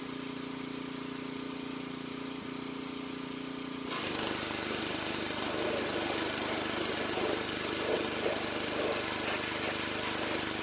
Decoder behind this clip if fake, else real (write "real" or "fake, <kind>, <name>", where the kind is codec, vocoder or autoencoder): real